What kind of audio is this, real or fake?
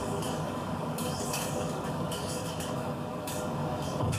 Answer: fake